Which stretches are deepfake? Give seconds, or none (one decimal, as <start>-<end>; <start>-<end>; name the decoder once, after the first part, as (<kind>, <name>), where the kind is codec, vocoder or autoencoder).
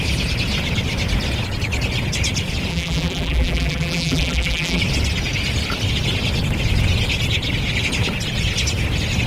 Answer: 2.7-4.8 (vocoder, BigVGAN v2)